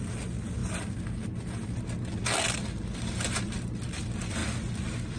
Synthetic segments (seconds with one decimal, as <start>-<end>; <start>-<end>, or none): none